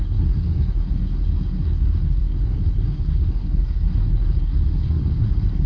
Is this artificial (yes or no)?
yes